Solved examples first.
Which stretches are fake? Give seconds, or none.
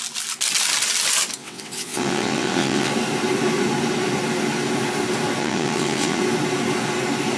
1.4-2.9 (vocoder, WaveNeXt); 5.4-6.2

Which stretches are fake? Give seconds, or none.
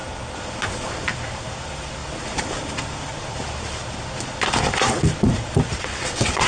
5.7-6.5 (vocoder, WaveNeXt)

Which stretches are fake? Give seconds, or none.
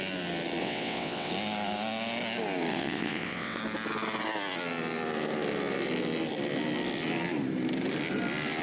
0.6-1.3 (vocoder, WaveNeXt); 2.7-3.6